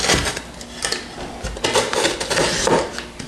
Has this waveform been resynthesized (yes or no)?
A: no